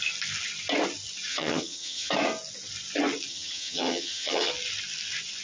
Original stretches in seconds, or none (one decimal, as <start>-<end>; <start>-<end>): 0.0-1.3; 2.1-3.3; 4.5-5.4